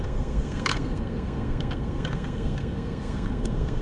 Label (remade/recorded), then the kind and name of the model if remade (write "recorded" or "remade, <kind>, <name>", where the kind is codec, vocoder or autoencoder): remade, codec, SNAC